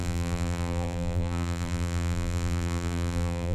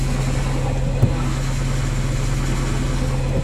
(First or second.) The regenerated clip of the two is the first